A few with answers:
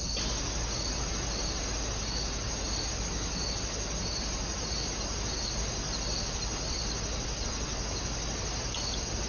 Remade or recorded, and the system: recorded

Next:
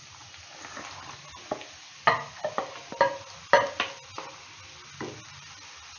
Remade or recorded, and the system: recorded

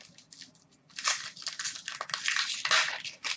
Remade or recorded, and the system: recorded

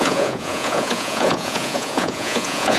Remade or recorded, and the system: remade, vocoder, Vocos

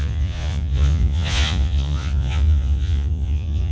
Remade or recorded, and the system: remade, vocoder, Vocos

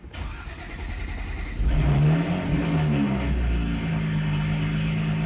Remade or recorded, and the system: recorded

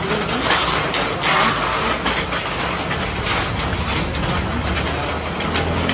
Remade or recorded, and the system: recorded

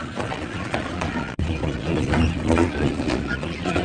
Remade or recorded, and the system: remade, vocoder, Vocos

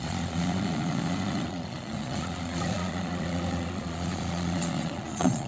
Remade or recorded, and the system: remade, vocoder, Vocos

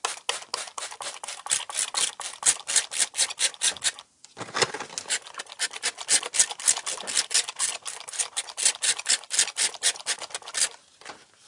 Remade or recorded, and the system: recorded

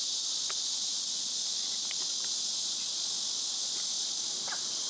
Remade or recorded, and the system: recorded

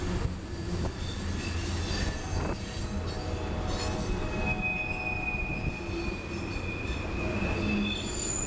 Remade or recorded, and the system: recorded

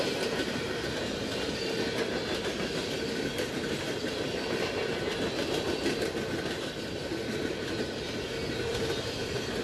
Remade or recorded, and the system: recorded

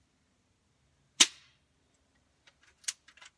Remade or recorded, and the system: recorded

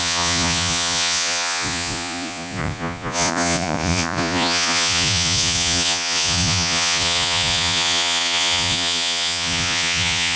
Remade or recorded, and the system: remade, vocoder, Vocos